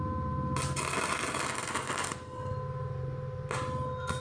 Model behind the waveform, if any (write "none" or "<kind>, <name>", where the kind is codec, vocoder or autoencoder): none